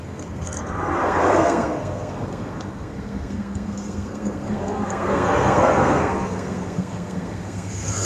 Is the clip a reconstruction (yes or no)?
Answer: yes